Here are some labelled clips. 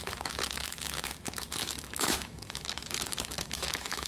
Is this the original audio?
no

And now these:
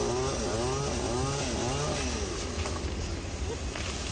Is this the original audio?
yes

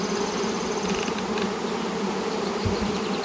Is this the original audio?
yes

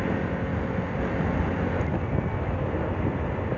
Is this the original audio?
yes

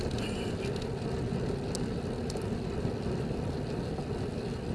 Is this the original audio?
yes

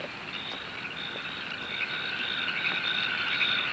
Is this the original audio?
yes